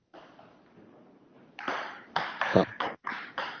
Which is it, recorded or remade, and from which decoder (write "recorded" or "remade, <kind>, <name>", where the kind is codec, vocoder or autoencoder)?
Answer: remade, vocoder, BigVGAN v2